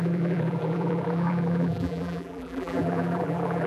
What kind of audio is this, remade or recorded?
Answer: remade